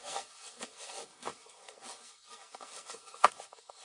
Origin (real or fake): fake